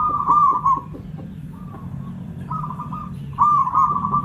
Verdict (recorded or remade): recorded